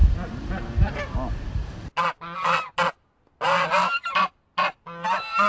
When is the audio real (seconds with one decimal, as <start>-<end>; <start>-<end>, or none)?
0.0-5.5